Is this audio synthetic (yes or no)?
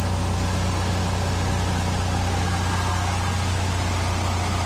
no